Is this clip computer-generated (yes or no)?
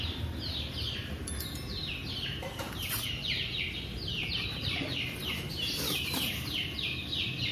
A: yes